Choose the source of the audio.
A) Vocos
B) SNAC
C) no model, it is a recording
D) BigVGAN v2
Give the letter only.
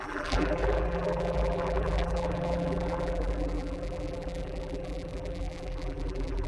D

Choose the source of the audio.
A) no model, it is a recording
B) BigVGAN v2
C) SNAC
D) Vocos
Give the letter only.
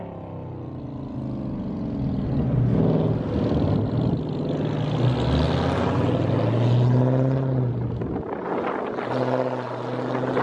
A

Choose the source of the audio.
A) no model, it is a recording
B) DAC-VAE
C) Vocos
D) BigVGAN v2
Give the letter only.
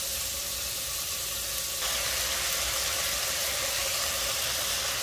A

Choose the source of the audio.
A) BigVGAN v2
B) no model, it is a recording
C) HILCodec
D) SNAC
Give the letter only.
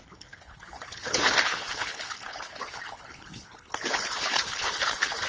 C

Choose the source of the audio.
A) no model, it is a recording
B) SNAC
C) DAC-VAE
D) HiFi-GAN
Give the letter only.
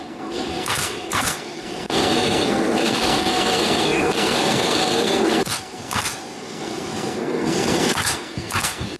B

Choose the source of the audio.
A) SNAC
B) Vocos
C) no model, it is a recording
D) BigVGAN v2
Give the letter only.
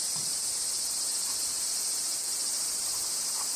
D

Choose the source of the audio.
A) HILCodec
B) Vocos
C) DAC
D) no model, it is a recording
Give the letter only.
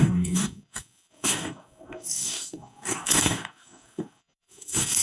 C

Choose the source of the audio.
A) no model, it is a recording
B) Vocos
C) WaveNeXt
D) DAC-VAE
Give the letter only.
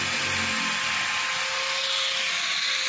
A